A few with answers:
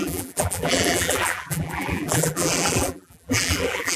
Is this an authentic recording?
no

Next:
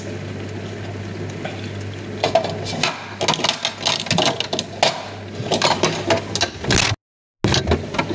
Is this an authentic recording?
yes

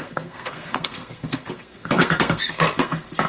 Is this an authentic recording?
no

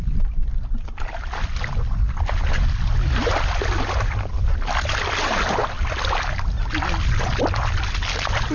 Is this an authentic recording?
yes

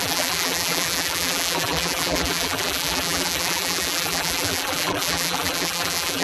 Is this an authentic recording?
no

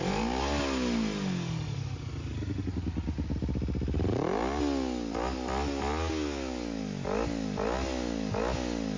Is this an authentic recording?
yes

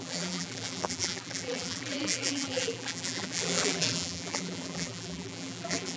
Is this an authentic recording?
no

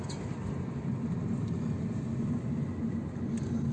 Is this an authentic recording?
yes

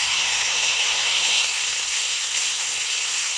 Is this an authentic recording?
no